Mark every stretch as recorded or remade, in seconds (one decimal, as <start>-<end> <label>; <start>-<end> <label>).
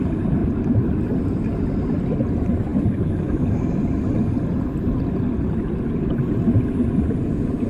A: 0.0-7.7 recorded